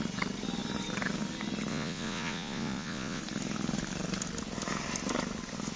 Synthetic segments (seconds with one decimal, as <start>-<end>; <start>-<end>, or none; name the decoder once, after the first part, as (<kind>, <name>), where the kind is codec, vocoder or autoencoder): 1.7-3.2 (vocoder, Vocos)

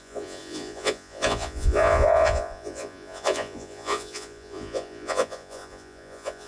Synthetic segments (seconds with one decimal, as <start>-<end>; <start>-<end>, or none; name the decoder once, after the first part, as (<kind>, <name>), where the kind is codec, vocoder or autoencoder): 0.0-6.5 (vocoder, Vocos)

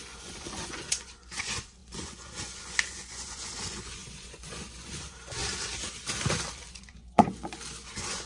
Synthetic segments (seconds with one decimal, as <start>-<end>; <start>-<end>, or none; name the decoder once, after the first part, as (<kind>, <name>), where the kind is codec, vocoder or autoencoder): 0.0-5.4 (vocoder, Vocos); 6.7-8.3

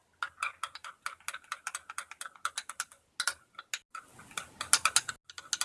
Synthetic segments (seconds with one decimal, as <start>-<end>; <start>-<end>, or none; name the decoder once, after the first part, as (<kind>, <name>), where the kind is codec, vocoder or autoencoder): none

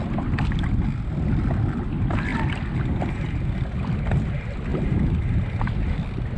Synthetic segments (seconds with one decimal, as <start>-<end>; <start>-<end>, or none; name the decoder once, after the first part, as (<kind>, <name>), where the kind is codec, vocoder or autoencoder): none